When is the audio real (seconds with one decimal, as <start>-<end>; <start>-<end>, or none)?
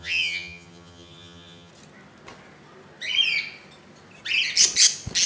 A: 1.7-5.3